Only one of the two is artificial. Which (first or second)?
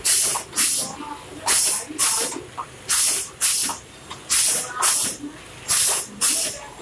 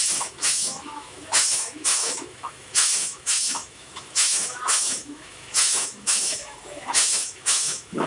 second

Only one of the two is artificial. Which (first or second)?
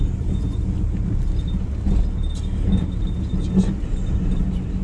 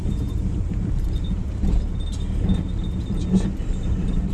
second